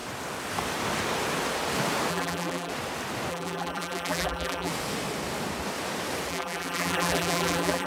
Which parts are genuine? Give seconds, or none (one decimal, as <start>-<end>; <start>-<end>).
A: 0.0-2.1; 2.7-3.3; 4.7-6.3